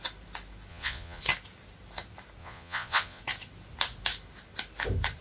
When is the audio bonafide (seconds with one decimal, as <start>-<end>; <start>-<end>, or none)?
0.0-0.7; 1.2-2.4; 3.2-5.2